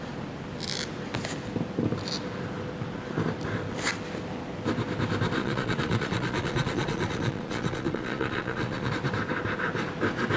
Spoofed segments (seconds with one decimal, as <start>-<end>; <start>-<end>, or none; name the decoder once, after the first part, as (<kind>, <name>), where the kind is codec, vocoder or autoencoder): 5.4-8.9 (vocoder, Vocos)